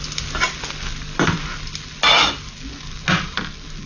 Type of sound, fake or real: real